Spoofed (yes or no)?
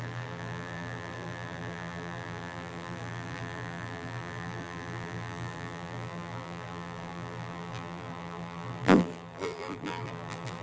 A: yes